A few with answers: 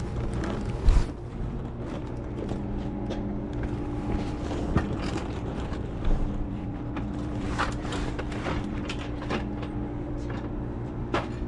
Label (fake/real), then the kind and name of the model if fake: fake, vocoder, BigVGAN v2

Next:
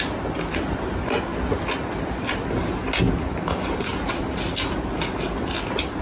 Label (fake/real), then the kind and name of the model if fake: real